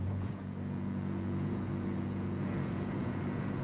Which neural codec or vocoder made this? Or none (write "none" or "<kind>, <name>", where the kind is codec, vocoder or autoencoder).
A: vocoder, Vocos